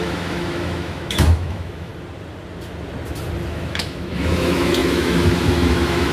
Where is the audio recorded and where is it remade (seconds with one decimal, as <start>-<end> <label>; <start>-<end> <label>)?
0.0-1.9 remade; 1.9-3.5 recorded; 3.5-6.1 remade